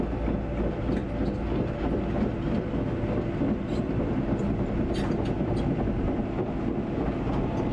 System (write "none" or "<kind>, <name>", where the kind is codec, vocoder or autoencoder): none